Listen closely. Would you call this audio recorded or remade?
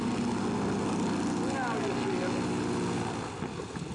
recorded